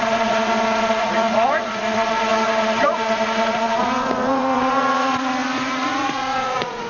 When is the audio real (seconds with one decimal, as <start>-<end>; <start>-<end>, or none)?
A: none

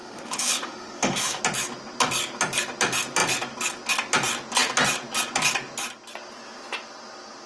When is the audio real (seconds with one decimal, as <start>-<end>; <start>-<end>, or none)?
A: 1.4-7.5

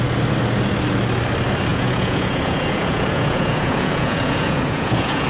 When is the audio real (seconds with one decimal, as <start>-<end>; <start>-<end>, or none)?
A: 0.0-1.7

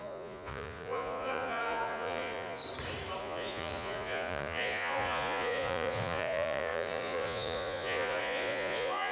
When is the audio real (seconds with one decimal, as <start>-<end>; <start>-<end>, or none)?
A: 2.6-3.2

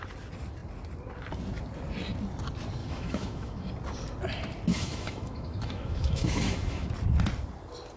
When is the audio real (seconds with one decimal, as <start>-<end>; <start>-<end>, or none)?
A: 0.0-2.8; 3.7-4.7; 6.9-8.0

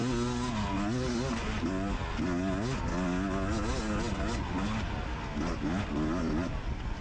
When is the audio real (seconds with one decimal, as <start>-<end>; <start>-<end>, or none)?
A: 0.0-7.0

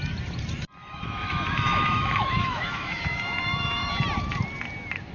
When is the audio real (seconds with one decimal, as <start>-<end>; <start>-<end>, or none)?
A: 0.0-0.8; 3.9-5.1

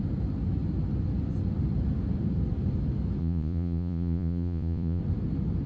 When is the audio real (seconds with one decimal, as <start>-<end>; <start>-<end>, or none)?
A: 0.0-3.2; 5.0-5.7